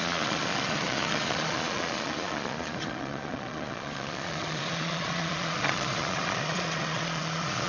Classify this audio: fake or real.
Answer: fake